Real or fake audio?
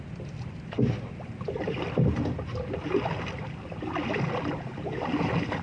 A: real